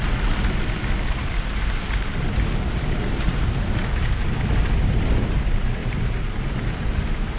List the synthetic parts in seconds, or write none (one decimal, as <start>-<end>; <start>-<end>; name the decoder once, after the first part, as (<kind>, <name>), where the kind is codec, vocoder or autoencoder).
1.2-3.6 (vocoder, BigVGAN v2); 5.8-6.3